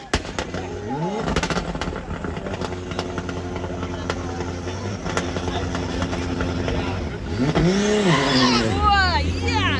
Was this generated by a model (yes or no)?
no